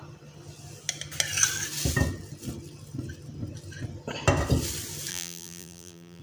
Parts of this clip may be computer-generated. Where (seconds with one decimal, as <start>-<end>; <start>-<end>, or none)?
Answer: 5.1-6.2